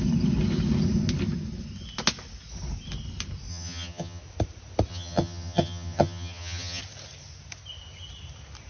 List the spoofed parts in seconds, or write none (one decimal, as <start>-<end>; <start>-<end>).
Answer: 3.5-4.2; 4.9-6.8